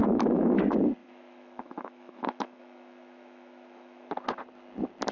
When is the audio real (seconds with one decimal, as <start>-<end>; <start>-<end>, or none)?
0.6-1.0; 4.1-5.1